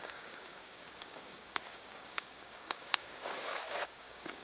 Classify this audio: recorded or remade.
remade